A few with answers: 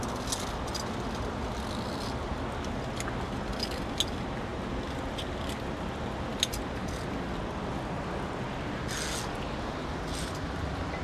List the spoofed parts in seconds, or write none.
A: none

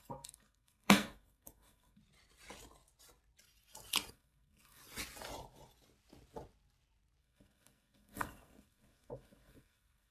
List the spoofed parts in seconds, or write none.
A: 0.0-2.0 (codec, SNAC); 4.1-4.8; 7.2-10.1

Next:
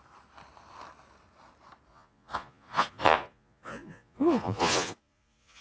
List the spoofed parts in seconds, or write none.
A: 1.9-5.6 (vocoder, Vocos)

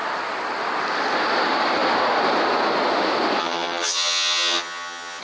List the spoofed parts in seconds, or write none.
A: 3.4-5.2 (vocoder, HiFi-GAN)

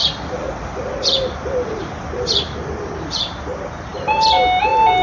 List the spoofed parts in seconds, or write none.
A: 0.0-3.0 (vocoder, BigVGAN v2)